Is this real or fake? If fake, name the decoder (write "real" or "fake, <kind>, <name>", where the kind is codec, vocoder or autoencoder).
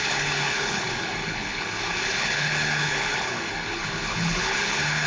fake, codec, HILCodec